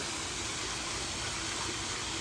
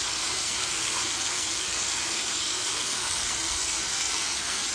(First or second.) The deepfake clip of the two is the second